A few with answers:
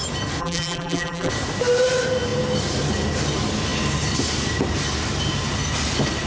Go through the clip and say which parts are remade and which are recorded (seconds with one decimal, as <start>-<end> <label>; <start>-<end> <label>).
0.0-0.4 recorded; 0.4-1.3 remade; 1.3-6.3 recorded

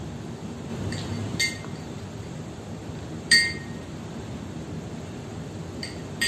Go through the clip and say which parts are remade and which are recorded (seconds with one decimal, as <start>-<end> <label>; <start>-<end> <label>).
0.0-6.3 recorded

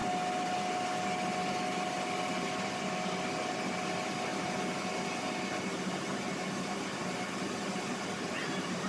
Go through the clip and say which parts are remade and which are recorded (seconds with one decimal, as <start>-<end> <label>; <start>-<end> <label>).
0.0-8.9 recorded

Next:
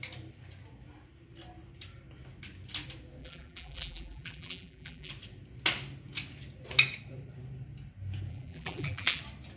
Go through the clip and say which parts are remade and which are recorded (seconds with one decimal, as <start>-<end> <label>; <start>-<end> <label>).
0.0-3.2 recorded; 3.2-5.1 remade; 5.1-8.3 recorded; 8.3-9.2 remade; 9.2-9.6 recorded

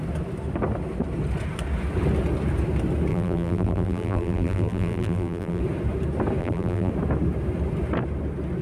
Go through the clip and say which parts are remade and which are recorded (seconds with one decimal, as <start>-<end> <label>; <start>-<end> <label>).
0.0-3.1 recorded; 3.1-5.6 remade; 5.6-6.4 recorded; 6.4-6.9 remade; 6.9-8.6 recorded

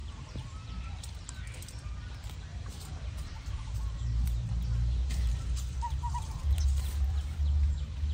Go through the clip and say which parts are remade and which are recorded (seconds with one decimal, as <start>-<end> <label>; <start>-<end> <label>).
0.0-1.0 remade; 1.0-2.5 recorded; 2.5-7.4 remade; 7.4-8.1 recorded